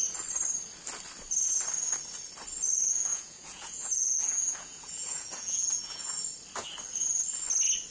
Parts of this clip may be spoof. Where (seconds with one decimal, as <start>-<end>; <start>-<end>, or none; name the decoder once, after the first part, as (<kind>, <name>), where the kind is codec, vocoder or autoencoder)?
3.1-6.2 (vocoder, Vocos)